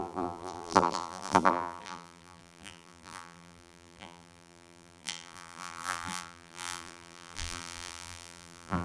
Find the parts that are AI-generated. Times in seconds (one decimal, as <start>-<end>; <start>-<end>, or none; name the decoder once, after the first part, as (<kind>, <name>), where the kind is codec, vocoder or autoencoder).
0.0-8.8 (vocoder, BigVGAN v2)